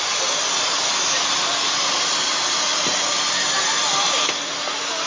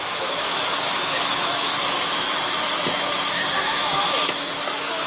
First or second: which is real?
first